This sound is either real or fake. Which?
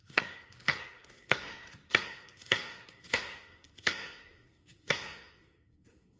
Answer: fake